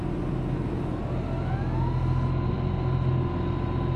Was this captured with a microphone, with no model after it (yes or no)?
yes